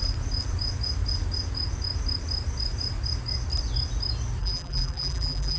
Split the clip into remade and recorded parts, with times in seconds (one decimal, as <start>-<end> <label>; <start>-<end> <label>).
0.0-4.4 recorded; 4.4-5.6 remade